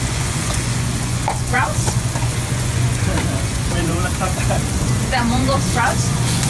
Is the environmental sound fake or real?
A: fake